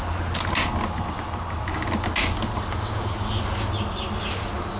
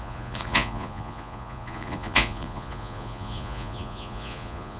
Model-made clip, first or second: second